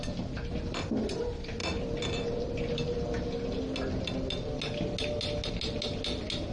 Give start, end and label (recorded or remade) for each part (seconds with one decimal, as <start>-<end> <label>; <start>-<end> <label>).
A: 0.0-6.5 recorded